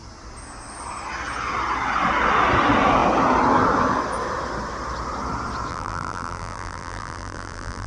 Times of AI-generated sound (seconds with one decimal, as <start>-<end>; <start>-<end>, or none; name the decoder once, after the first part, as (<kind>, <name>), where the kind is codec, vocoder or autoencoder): 5.7-7.9 (vocoder, BigVGAN v2)